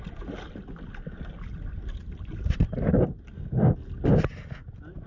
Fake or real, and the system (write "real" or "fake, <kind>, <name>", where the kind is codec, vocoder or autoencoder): real